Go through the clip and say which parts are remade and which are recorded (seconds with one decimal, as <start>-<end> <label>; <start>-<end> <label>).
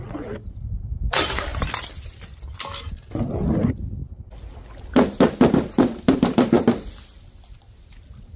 0.0-8.4 recorded